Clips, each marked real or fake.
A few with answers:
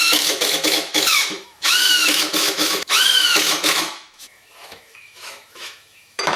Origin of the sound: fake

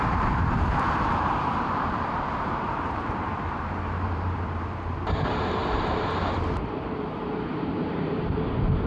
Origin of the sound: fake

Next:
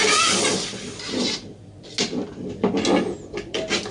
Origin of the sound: real